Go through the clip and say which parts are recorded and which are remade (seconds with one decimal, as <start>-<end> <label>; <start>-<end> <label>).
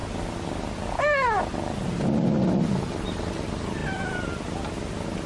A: 0.0-5.3 recorded